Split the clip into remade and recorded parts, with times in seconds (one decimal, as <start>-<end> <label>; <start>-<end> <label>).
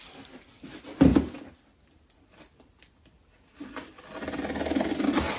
0.0-5.4 recorded